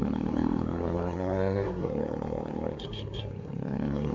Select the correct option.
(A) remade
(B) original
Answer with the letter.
A